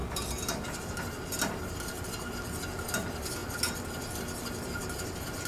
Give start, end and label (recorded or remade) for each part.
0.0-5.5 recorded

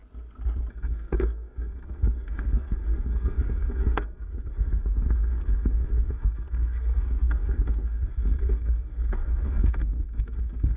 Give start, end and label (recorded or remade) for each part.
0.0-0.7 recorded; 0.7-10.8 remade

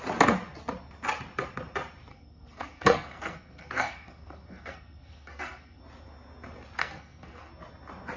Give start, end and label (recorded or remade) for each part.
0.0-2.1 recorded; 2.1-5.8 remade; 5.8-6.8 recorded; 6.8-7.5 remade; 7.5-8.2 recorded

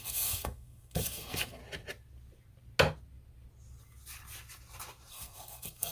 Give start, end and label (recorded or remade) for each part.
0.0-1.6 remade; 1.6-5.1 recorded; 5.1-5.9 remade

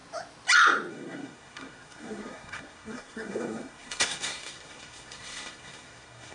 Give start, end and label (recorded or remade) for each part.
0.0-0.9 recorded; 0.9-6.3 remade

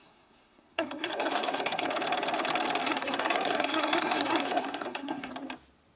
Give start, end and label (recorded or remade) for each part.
0.0-1.9 remade; 1.9-2.8 recorded; 2.8-5.3 remade; 5.3-6.0 recorded

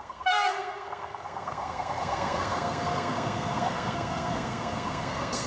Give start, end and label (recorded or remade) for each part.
0.0-5.5 remade